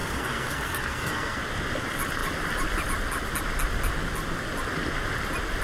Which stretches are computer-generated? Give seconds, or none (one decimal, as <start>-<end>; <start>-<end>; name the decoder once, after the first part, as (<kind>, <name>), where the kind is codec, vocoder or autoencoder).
0.0-1.4 (codec, SNAC)